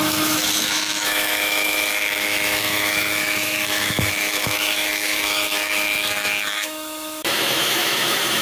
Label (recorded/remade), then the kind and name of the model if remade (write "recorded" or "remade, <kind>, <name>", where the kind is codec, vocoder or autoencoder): remade, autoencoder, DAC-VAE